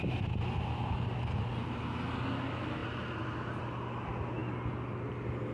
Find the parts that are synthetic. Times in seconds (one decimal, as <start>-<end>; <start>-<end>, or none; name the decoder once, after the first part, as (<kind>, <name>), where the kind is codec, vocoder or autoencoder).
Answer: none